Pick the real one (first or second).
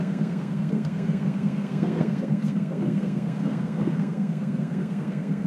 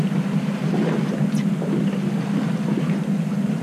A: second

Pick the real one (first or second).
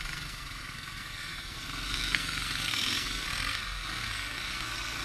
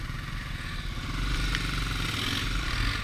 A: second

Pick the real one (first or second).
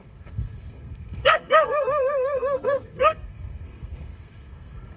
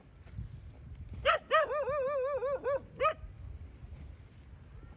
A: second